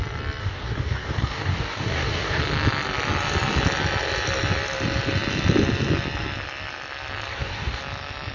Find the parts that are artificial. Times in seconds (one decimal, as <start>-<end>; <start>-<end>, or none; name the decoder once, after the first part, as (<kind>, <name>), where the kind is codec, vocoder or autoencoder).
0.4-2.4 (codec, DAC); 7.3-7.8

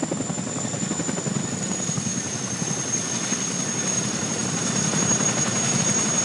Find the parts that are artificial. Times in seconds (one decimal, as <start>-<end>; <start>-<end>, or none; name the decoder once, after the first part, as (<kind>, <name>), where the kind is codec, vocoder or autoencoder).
none